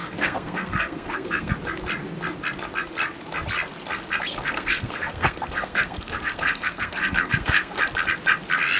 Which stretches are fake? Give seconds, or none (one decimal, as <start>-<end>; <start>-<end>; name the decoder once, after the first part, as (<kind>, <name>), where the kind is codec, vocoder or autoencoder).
0.0-1.5 (codec, SNAC); 4.3-7.8